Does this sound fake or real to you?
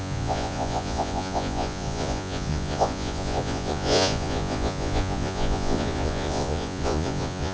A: fake